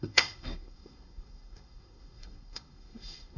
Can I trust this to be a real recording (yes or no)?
no